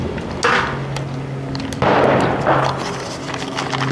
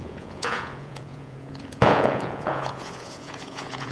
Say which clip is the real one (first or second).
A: first